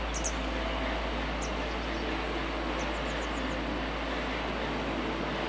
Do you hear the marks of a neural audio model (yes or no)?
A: no